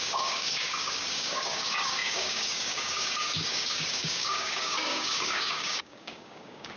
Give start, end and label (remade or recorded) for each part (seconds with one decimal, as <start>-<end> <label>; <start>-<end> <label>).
0.0-6.8 remade